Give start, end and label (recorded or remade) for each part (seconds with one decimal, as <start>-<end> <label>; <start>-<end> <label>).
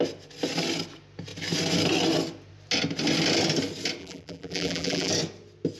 0.0-4.0 recorded; 4.0-5.1 remade; 5.1-5.8 recorded